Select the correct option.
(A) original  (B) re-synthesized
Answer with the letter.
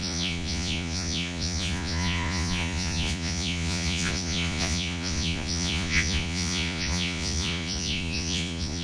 B